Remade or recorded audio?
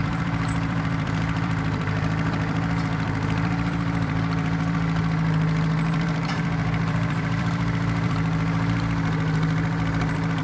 remade